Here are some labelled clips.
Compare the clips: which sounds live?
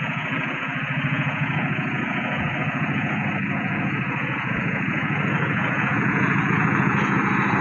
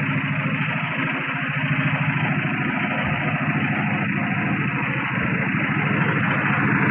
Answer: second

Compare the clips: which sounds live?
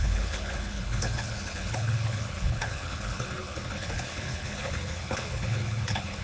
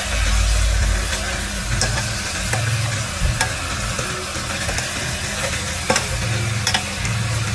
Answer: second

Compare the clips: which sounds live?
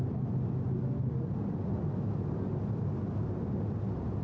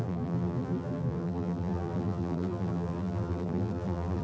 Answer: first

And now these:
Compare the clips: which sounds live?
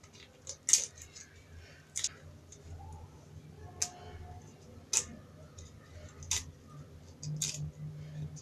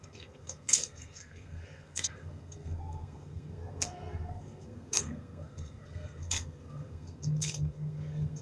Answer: first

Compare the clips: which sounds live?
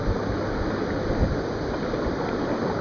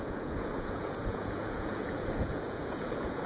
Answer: first